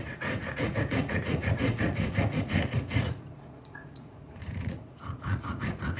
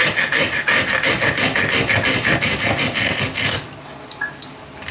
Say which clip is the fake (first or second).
first